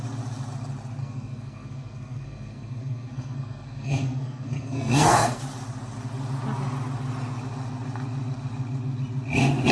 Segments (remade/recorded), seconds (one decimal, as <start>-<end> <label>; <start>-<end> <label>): 0.0-1.0 recorded; 1.0-5.4 remade; 5.4-9.7 recorded